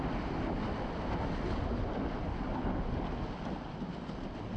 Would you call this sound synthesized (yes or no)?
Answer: no